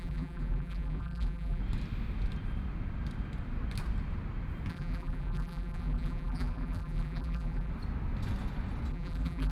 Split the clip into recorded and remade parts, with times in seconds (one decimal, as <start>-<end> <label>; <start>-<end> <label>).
0.0-1.6 remade; 1.6-4.7 recorded; 4.7-7.7 remade; 7.7-8.9 recorded; 8.9-9.5 remade